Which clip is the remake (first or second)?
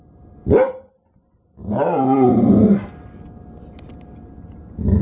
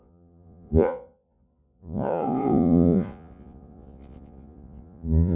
second